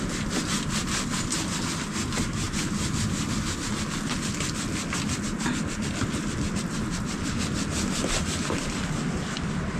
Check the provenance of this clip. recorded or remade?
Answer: recorded